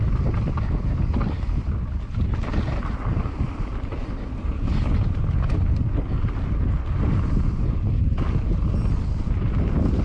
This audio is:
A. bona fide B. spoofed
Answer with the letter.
A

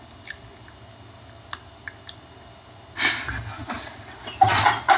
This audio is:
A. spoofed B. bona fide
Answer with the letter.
B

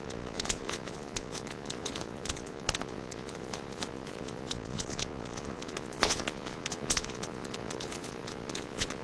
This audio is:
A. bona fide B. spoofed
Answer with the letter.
B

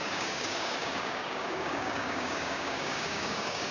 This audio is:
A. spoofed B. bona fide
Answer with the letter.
A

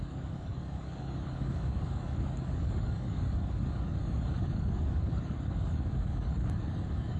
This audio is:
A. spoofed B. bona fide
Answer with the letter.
A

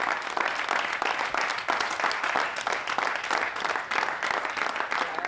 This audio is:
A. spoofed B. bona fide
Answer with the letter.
B